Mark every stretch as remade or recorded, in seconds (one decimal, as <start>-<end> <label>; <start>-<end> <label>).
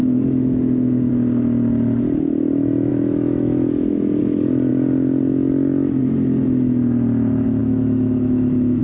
0.0-1.1 remade; 1.1-2.9 recorded; 2.9-4.2 remade; 4.2-7.6 recorded; 7.6-8.8 remade